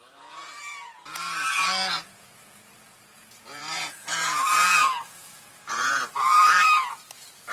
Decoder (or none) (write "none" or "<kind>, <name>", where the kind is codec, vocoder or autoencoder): vocoder, Vocos